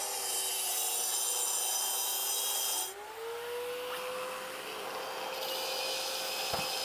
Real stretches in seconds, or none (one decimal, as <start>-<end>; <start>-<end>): 0.0-6.8